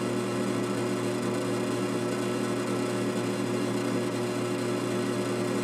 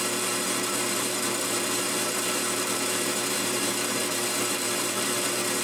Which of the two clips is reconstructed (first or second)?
second